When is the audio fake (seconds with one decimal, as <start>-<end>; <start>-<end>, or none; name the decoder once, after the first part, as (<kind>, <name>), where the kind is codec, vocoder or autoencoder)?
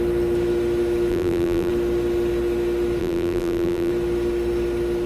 1.1-1.7 (vocoder, BigVGAN v2); 3.0-3.9